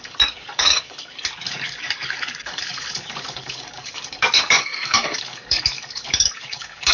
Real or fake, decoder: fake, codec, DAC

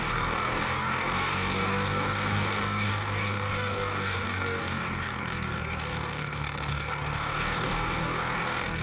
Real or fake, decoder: fake, codec, DAC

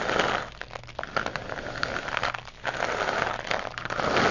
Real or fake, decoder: real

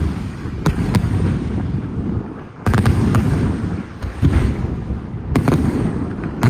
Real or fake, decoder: fake, codec, DAC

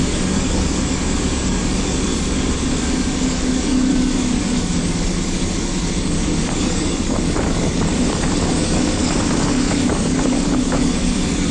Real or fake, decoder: fake, codec, DAC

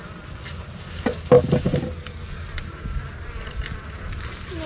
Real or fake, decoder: real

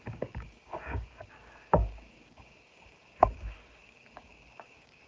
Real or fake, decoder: fake, codec, DAC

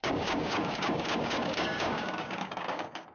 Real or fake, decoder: fake, codec, DAC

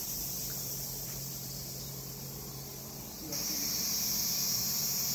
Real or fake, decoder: real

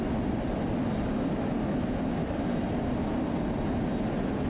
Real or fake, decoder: real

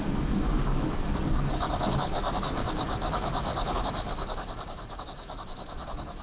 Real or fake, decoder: fake, codec, DAC